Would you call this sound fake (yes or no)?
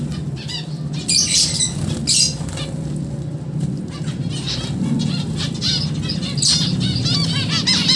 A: no